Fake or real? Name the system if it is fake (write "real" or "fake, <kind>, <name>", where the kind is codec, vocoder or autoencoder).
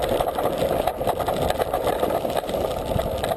real